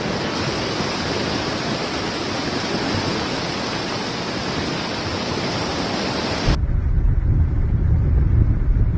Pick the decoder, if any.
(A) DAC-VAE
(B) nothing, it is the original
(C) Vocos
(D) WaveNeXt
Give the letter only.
B